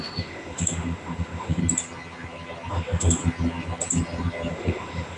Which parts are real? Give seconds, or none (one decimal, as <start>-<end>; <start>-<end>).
1.6-2.7; 3.2-4.5